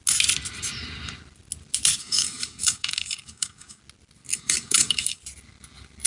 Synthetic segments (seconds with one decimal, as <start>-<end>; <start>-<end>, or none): 2.0-3.8; 4.3-5.2